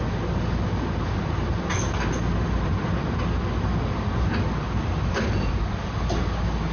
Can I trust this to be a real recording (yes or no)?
yes